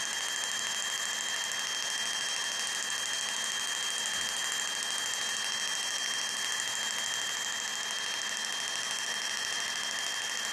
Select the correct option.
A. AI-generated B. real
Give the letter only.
B